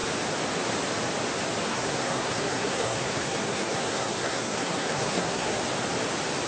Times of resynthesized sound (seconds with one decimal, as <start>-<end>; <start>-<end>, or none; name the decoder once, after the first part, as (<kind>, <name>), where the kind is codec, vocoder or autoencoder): 1.7-5.6 (codec, SNAC)